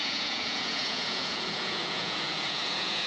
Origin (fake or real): fake